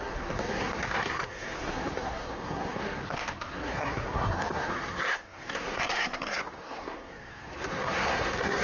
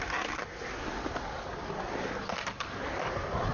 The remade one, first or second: first